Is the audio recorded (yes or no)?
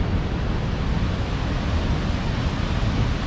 yes